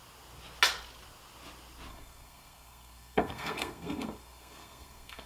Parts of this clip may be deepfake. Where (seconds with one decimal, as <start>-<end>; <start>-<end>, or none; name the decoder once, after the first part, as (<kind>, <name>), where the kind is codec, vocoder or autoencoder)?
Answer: 1.9-5.3 (codec, SNAC)